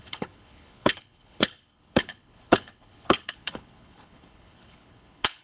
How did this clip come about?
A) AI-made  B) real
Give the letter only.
A